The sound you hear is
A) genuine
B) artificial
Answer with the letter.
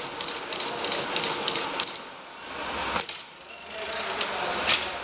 A